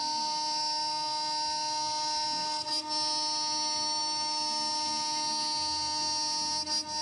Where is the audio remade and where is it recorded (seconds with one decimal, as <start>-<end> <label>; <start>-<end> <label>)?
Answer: 0.0-7.0 recorded